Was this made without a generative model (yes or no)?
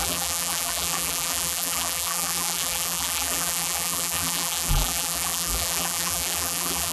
no